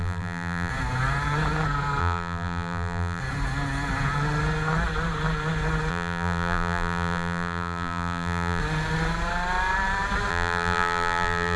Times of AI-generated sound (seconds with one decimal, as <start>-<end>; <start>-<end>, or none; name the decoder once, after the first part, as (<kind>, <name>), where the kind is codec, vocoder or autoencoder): 0.0-0.7 (vocoder, BigVGAN v2); 2.0-3.2; 5.9-8.6; 10.3-11.6